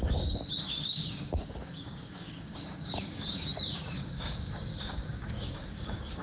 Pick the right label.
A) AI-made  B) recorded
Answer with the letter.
A